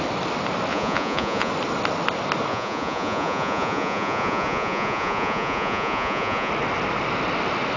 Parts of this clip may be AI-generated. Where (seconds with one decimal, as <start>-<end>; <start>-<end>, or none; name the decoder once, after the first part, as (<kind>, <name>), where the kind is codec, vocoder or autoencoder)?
0.7-1.5 (vocoder, Vocos); 2.5-6.5